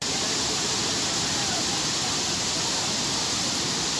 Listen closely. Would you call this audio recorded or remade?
recorded